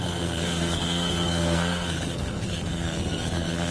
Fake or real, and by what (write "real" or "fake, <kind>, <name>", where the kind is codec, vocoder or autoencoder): fake, codec, SNAC